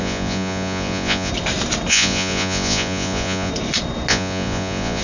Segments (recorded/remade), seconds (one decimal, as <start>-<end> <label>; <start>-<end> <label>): 0.0-1.3 remade; 1.3-1.9 recorded; 1.9-3.5 remade; 3.5-4.1 recorded; 4.1-5.0 remade